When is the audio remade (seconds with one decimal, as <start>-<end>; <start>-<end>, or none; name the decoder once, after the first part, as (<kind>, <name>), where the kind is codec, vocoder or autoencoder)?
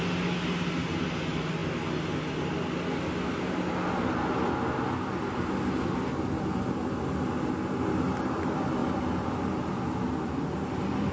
none